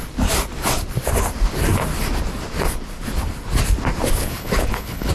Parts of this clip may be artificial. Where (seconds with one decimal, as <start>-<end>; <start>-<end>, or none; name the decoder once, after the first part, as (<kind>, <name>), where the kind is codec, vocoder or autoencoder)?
4.2-5.1 (codec, HILCodec)